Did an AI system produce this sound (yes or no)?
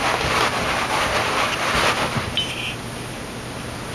no